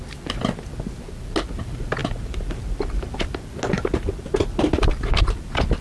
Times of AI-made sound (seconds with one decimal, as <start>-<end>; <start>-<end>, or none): none